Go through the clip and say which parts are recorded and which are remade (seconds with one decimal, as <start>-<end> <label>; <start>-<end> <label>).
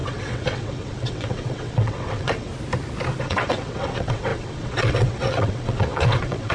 0.0-2.5 remade; 2.5-3.2 recorded; 3.2-6.5 remade